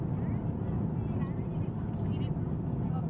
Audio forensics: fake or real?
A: real